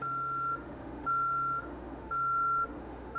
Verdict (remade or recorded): remade